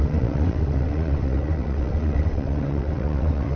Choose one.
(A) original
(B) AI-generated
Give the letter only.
B